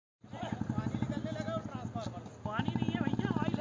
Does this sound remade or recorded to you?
recorded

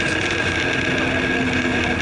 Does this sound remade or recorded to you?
recorded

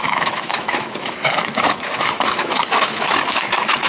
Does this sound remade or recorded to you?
remade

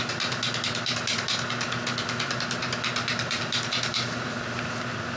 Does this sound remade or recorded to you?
recorded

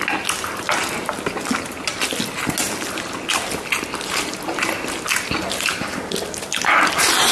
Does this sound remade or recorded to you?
recorded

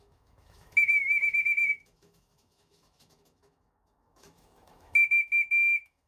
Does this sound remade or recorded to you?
remade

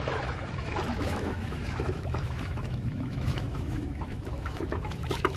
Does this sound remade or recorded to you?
remade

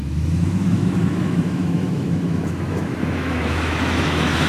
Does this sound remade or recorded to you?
remade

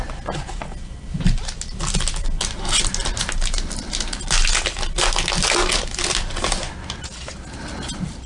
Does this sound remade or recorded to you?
recorded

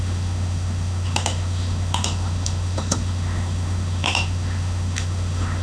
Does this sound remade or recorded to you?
remade